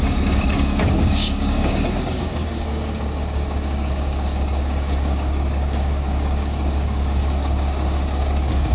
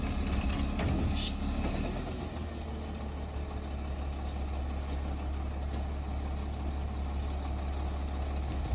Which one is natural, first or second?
second